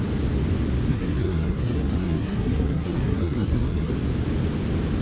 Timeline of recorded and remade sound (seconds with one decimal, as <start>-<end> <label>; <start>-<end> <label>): 0.0-0.9 recorded; 0.9-3.9 remade; 3.9-5.0 recorded